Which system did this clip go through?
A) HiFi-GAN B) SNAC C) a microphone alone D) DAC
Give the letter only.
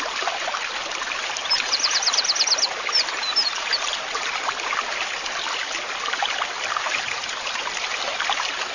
C